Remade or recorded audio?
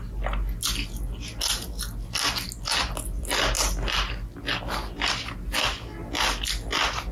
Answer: recorded